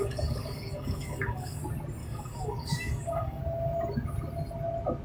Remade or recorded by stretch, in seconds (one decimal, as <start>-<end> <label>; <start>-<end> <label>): 0.0-1.6 remade; 1.6-2.0 recorded; 2.0-3.4 remade; 3.4-5.0 recorded